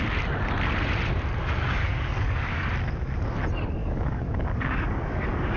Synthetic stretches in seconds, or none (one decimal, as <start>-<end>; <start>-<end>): 1.4-2.7; 3.8-5.6